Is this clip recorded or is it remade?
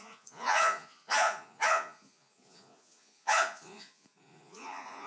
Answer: remade